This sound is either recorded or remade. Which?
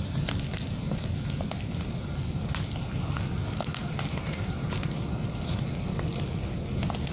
recorded